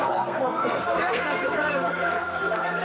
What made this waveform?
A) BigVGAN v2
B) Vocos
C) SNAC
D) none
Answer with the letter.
C